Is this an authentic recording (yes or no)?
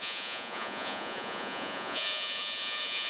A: no